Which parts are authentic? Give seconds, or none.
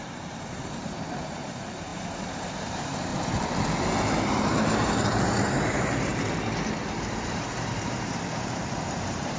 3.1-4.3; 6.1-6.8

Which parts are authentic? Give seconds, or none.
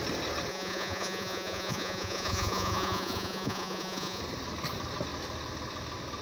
0.0-0.5; 4.2-6.2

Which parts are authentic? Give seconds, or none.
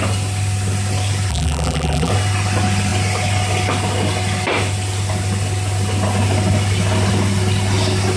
0.0-1.3; 2.1-8.2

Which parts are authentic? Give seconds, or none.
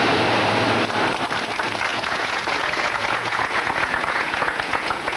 0.0-1.9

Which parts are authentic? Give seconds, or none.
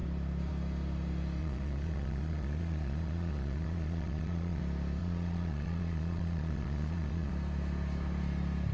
0.0-1.4; 4.6-5.0; 7.3-8.7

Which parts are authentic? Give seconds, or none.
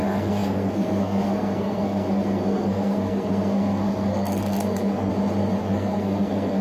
5.1-5.6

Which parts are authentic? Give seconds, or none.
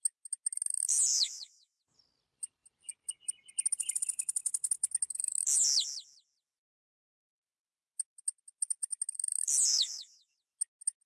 0.0-1.1; 1.8-9.7; 10.3-11.1